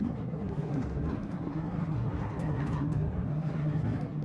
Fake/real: fake